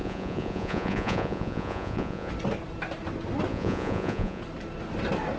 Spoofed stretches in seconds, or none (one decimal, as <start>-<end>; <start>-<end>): 0.0-2.3; 3.5-4.4